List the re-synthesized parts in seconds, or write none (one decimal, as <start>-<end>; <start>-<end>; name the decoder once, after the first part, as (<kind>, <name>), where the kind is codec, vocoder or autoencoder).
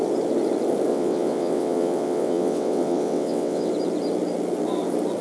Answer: 0.9-3.7 (vocoder, WaveNeXt)